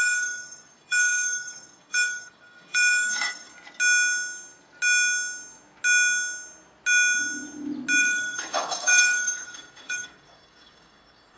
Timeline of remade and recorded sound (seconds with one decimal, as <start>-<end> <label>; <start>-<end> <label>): 0.0-3.5 remade; 3.5-8.0 recorded; 8.0-11.4 remade